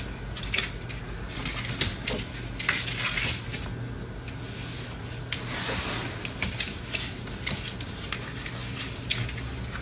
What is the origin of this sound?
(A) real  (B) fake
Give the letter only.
A